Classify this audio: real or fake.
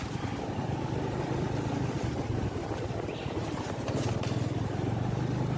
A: fake